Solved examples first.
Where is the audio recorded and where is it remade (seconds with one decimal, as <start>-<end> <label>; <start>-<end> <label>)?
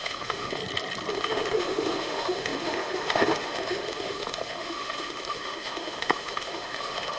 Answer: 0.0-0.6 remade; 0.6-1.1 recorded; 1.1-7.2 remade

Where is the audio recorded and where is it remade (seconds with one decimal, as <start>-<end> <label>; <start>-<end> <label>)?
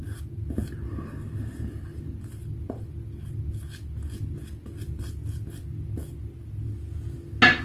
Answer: 0.0-7.6 recorded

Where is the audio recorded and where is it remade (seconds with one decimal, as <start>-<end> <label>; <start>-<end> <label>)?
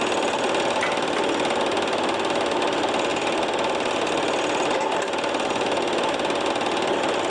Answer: 0.0-7.3 recorded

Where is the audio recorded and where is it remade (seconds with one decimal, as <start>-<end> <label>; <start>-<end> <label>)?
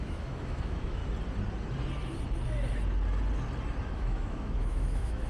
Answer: 0.0-1.0 remade; 1.0-3.9 recorded; 3.9-5.3 remade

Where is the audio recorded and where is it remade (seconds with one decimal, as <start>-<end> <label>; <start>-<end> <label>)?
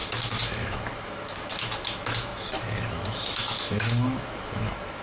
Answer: 0.0-5.0 remade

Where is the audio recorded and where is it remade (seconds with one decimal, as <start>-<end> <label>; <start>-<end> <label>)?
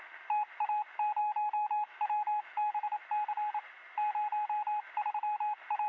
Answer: 0.0-1.2 recorded; 1.2-3.0 remade; 3.0-5.9 recorded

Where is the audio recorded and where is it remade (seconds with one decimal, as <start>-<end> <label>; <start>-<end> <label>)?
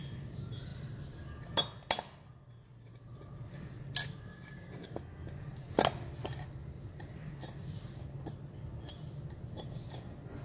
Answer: 0.0-10.4 recorded